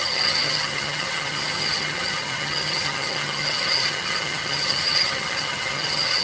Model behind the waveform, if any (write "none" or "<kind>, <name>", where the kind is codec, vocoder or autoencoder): vocoder, HiFi-GAN